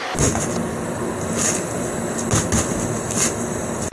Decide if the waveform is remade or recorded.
recorded